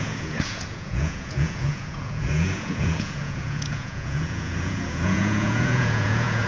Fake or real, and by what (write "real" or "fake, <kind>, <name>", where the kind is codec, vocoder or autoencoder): fake, vocoder, Vocos